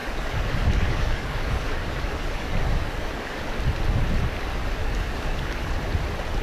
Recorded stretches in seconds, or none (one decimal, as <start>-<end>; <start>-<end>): 3.4-4.6; 5.7-6.4